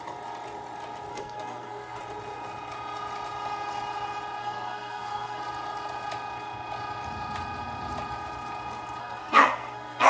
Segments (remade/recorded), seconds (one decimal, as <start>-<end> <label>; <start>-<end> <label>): 0.0-1.1 recorded; 1.1-2.0 remade; 2.0-4.4 recorded; 4.4-5.4 remade; 5.4-9.0 recorded; 9.0-10.1 remade